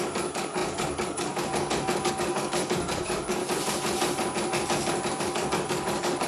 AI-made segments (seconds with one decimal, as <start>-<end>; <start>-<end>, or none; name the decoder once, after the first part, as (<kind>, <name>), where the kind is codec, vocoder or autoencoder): 0.0-3.4 (codec, DAC); 5.2-6.3